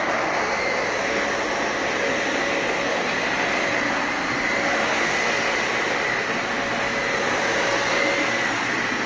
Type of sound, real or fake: real